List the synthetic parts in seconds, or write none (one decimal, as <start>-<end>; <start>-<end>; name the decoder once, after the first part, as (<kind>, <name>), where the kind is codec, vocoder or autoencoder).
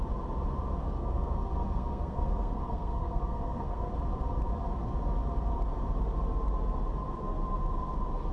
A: 0.8-3.9 (codec, SNAC)